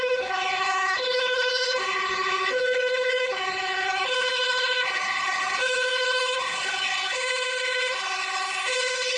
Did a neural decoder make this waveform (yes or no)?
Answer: yes